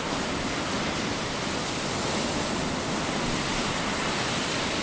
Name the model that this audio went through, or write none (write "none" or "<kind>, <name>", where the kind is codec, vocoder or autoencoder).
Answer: none